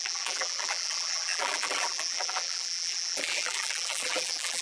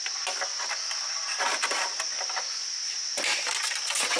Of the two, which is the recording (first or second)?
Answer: second